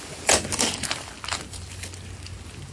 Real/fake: real